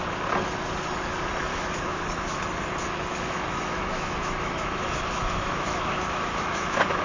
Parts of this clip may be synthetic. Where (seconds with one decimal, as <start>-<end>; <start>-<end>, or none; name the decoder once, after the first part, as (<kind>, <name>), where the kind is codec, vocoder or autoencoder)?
1.5-2.4 (autoencoder, DAC-VAE); 3.1-7.0